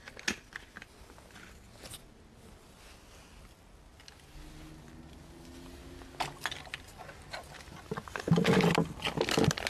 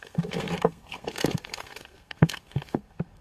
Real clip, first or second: first